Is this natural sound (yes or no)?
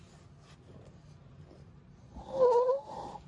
yes